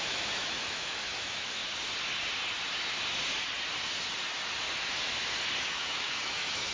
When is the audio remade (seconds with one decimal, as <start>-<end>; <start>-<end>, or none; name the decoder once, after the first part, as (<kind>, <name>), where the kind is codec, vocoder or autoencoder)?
0.0-1.6 (autoencoder, DAC-VAE); 5.6-6.7

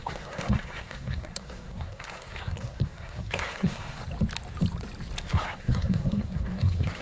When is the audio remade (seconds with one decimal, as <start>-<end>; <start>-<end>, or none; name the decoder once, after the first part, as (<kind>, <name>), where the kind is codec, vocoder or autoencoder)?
0.0-4.0 (codec, SNAC); 5.2-7.0

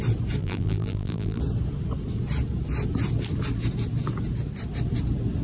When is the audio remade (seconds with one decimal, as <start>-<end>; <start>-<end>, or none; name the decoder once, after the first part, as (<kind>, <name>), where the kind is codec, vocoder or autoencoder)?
0.4-1.4 (vocoder, BigVGAN v2)

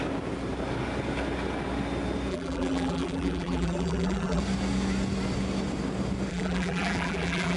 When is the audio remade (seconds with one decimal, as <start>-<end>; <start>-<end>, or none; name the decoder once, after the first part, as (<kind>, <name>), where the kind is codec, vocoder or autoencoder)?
2.3-4.4 (vocoder, BigVGAN v2); 6.3-7.6

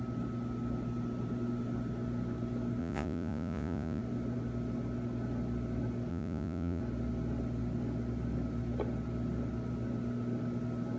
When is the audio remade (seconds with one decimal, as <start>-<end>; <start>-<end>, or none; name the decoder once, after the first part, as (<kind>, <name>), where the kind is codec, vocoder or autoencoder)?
2.8-4.0 (vocoder, Vocos); 6.1-6.8

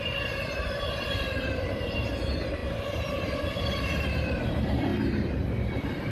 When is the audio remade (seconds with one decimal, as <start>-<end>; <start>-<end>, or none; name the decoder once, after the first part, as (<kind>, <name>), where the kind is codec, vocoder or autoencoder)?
0.0-4.9 (vocoder, BigVGAN v2)

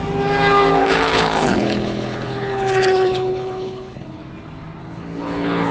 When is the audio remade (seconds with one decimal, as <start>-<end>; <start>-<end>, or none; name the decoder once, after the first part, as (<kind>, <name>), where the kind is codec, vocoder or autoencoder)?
0.8-4.2 (codec, HILCodec); 4.8-5.7

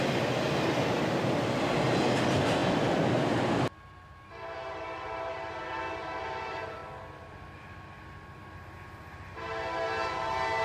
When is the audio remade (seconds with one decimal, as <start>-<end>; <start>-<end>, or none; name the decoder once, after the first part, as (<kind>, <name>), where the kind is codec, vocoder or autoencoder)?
none